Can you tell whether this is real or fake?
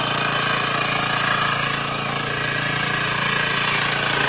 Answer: real